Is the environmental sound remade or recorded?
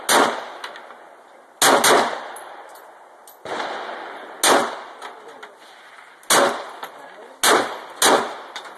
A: recorded